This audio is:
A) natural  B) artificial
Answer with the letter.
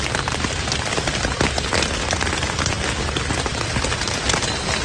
A